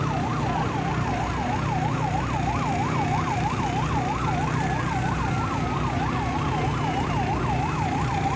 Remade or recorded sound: remade